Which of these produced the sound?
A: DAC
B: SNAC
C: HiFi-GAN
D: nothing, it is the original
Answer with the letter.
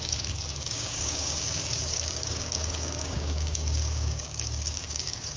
A